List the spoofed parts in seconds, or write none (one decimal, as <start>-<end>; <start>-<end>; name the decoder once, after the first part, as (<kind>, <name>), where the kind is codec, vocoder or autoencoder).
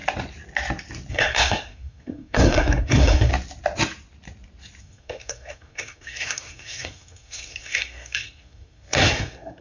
1.1-3.3 (codec, SNAC); 4.8-9.6